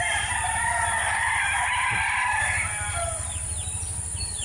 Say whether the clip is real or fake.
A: fake